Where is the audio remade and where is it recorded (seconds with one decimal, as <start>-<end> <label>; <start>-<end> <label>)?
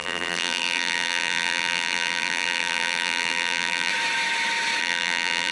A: 0.0-3.9 remade; 3.9-4.8 recorded; 4.8-5.5 remade